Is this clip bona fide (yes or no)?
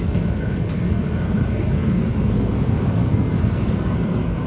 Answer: no